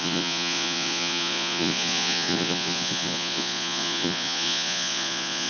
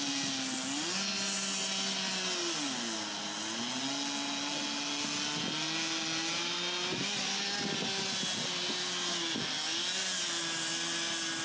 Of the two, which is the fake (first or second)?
first